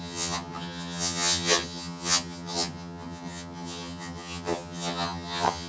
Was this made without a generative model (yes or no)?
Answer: no